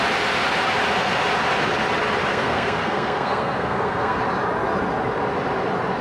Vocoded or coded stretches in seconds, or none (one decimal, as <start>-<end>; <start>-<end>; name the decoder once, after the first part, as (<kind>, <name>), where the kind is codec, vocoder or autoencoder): 2.3-4.2 (codec, SNAC)